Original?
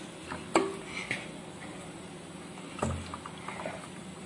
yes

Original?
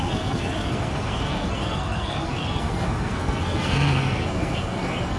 no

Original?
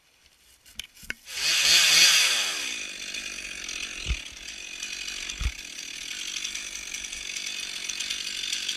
yes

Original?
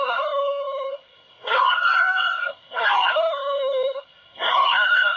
no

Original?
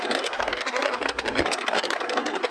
no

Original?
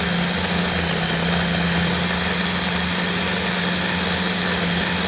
yes